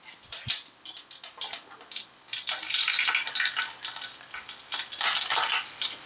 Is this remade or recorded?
recorded